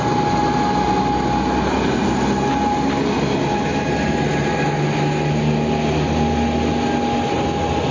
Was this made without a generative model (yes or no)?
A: yes